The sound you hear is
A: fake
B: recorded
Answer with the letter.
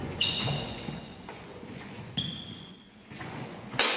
A